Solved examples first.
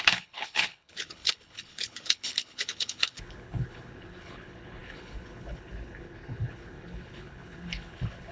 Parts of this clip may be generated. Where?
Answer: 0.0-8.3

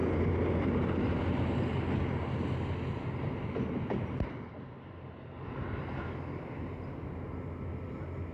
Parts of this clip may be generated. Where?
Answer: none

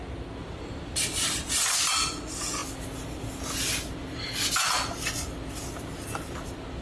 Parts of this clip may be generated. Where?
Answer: none

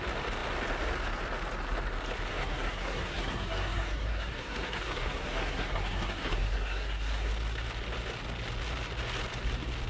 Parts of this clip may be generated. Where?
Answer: 2.3-7.3